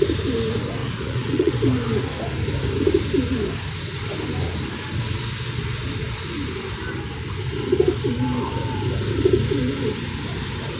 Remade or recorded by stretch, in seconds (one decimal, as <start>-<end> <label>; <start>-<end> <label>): 0.0-0.8 recorded; 0.8-1.5 remade; 1.5-10.8 recorded